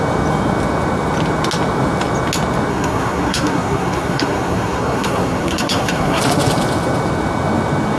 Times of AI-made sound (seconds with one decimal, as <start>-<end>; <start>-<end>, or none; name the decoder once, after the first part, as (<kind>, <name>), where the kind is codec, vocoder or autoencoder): 2.7-6.2 (codec, SNAC)